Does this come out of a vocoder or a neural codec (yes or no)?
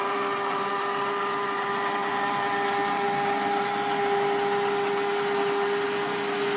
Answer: no